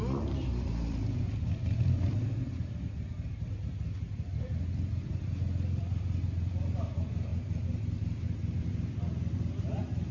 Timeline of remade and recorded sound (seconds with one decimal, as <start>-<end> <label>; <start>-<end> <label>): 0.0-7.3 remade; 7.3-8.6 recorded; 8.6-10.1 remade